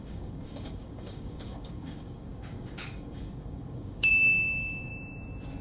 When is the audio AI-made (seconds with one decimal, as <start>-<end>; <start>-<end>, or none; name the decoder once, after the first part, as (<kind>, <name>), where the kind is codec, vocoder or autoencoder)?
0.0-4.9 (codec, DAC)